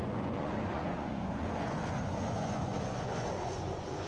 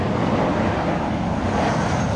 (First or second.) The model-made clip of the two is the first